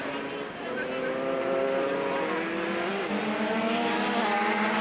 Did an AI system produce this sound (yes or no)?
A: no